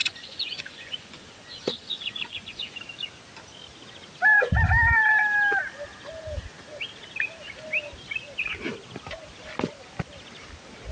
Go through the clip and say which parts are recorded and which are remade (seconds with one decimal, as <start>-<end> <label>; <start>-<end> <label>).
0.0-2.8 remade; 2.8-10.9 recorded